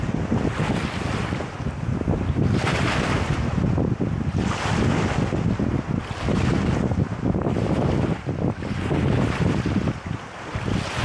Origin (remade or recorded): recorded